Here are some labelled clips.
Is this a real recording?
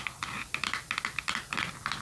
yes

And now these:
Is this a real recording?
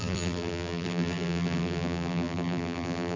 no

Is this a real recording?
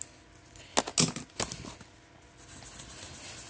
yes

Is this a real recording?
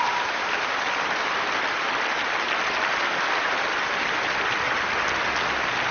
yes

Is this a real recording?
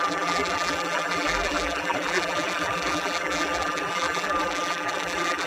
no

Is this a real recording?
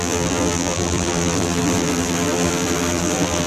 no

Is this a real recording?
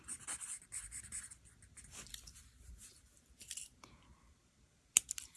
no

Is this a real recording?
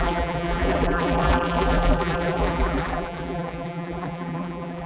no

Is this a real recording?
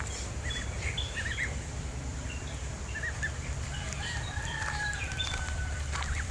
no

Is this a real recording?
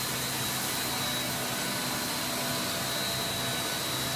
yes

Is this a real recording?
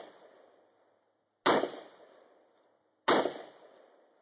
yes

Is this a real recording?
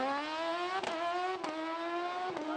yes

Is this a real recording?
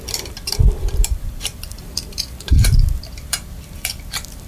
no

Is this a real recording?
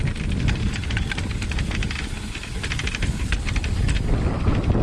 yes